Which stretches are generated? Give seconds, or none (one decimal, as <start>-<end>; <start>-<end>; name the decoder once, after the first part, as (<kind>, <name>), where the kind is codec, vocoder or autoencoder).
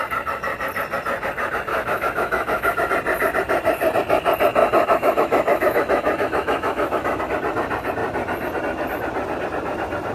1.7-2.9 (autoencoder, DAC-VAE); 4.6-7.2